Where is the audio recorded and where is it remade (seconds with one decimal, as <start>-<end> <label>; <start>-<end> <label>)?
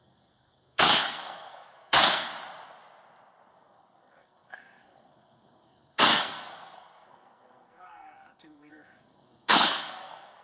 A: 0.0-2.3 remade; 2.3-3.5 recorded; 3.5-10.4 remade